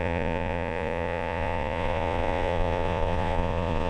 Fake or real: fake